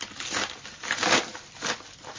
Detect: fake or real real